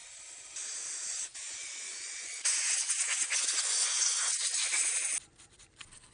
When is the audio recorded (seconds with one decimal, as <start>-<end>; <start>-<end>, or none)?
0.0-1.3; 4.6-6.1